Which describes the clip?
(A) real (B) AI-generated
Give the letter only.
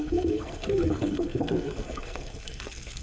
B